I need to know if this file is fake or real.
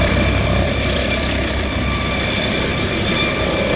fake